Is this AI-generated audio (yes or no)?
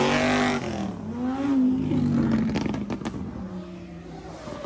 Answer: no